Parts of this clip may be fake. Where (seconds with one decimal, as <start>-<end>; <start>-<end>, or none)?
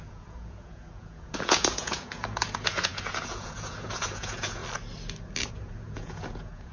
0.0-4.6; 5.5-6.7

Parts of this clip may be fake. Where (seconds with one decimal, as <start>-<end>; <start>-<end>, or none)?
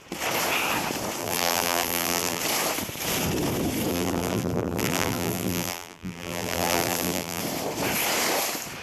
1.2-2.4; 3.9-7.4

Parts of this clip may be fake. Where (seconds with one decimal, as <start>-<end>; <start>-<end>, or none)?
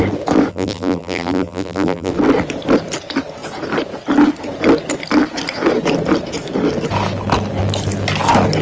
0.5-2.1